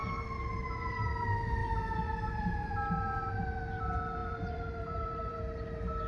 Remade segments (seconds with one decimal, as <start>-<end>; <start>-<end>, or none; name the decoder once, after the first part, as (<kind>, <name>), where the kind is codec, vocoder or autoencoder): 0.0-1.1 (vocoder, BigVGAN v2); 1.6-2.7; 4.2-5.4